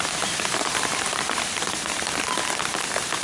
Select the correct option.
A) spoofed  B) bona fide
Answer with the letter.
B